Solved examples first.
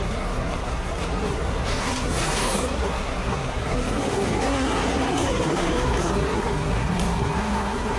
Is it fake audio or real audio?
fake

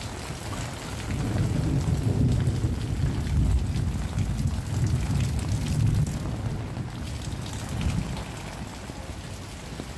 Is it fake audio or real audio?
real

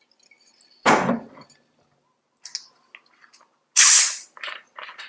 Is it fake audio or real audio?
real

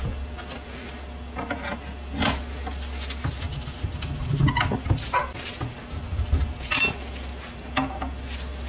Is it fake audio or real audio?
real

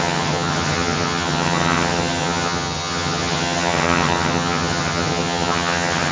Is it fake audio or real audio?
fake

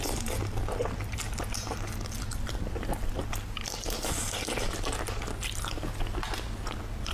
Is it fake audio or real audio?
real